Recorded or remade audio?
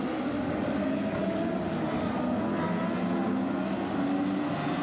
recorded